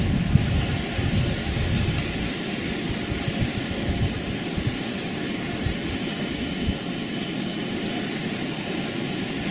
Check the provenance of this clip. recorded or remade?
recorded